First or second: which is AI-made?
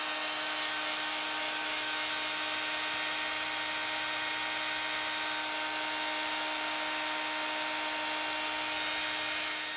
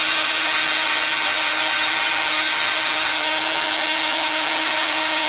second